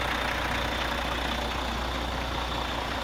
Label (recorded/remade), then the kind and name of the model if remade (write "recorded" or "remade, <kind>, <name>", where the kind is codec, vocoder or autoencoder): recorded